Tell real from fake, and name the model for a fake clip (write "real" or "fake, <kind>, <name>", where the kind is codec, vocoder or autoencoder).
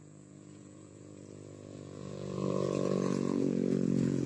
fake, vocoder, Vocos